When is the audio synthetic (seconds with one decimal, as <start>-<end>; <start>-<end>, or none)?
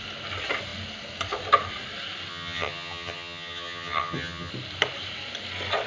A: 2.3-4.5